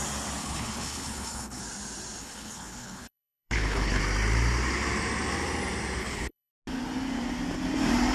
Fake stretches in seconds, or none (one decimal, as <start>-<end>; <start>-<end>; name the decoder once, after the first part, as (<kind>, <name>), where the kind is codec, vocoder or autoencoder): 0.4-1.6 (codec, HILCodec); 2.2-4.0; 6.0-6.5